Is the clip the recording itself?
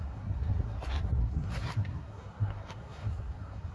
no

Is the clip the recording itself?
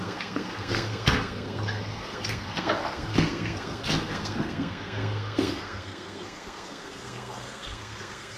no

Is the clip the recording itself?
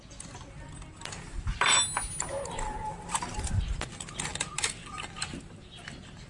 yes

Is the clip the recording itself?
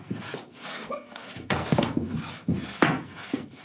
no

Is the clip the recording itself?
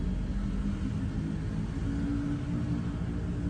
yes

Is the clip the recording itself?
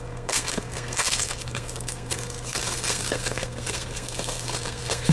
no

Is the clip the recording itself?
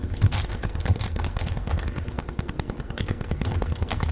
no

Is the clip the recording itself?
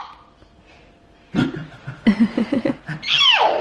yes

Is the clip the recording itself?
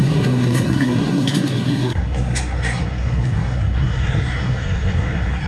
no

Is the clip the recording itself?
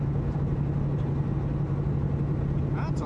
yes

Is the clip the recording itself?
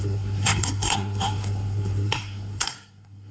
no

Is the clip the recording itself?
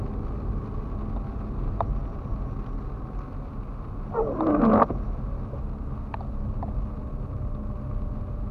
yes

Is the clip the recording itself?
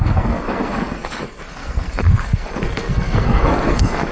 no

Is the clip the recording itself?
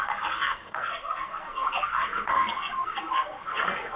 no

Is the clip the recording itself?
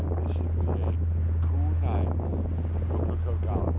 yes